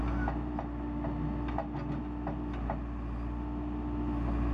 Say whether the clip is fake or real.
real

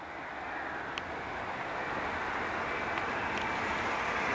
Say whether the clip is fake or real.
real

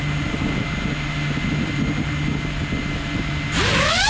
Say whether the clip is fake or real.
real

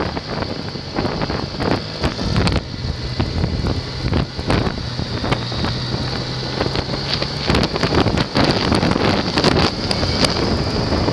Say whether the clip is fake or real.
real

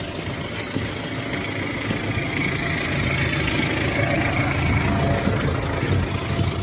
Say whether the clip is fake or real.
real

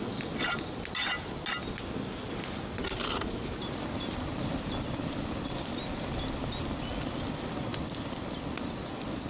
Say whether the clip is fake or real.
real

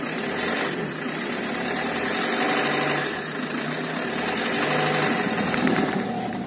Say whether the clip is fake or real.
real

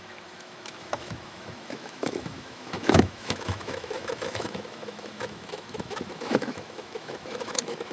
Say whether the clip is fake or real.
fake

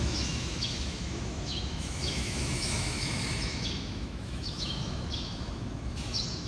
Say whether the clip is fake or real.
fake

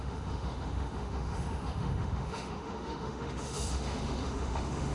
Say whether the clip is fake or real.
fake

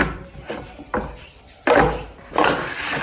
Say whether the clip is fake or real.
real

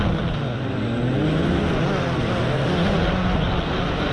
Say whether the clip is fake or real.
real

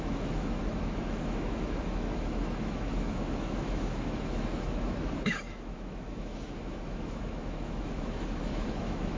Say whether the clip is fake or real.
fake